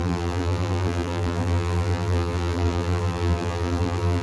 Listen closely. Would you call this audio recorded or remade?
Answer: remade